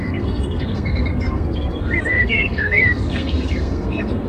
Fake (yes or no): yes